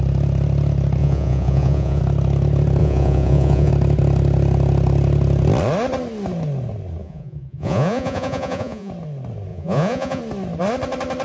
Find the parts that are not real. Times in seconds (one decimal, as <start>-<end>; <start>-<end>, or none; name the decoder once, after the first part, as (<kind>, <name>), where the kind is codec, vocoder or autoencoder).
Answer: 1.0-2.0 (vocoder, Vocos); 2.8-3.7; 7.0-8.9; 9.5-10.2